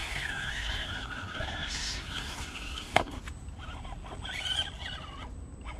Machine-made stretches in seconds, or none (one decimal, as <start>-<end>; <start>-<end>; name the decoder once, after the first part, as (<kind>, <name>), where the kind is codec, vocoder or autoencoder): 0.0-3.2 (codec, SNAC)